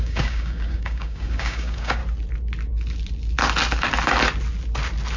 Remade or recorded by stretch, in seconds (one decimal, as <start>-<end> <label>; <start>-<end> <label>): 0.0-2.0 remade; 2.0-5.2 recorded